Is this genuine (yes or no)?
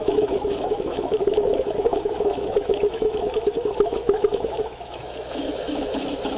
no